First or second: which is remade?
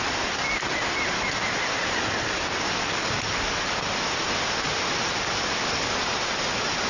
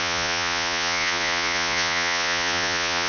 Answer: second